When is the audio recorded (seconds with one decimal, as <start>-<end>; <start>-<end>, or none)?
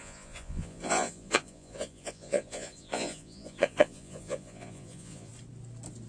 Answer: 5.3-6.1